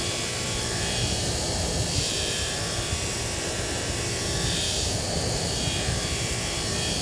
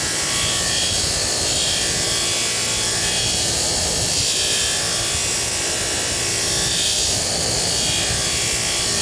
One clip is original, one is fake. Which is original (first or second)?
second